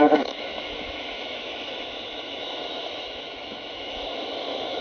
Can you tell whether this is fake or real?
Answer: fake